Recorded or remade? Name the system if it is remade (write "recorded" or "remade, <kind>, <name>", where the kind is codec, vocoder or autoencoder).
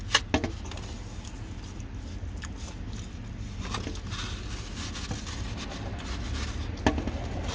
recorded